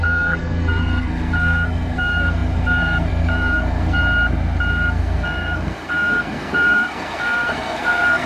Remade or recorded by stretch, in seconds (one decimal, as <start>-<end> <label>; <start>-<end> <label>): 0.0-4.0 remade; 4.0-4.7 recorded; 4.7-8.3 remade